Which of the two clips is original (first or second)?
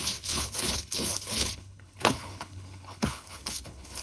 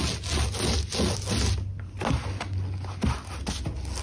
second